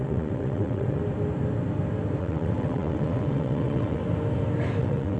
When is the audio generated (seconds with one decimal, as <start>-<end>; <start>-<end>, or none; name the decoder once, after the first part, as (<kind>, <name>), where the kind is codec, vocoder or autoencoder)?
0.0-1.0 (vocoder, WaveNeXt); 2.2-4.0; 4.8-5.2